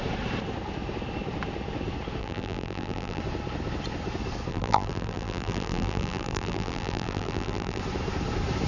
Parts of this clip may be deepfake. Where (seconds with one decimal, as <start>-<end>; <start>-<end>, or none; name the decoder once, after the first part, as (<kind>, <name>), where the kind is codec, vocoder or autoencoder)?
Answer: 2.2-3.2 (vocoder, BigVGAN v2); 4.5-7.8